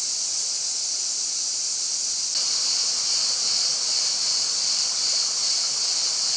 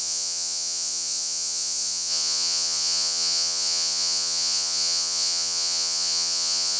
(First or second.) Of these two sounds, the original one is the first